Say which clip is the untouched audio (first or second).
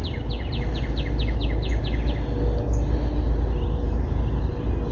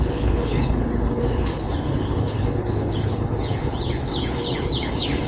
first